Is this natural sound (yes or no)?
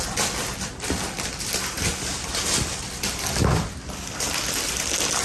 yes